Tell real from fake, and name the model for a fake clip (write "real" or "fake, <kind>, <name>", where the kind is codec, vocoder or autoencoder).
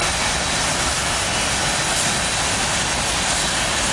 real